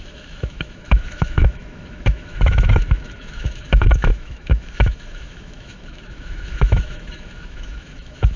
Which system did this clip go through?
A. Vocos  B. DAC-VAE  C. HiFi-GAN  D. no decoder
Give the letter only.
B